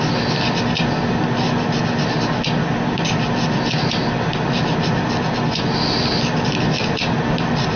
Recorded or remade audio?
recorded